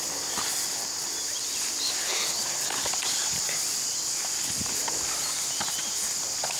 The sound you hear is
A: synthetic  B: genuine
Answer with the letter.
B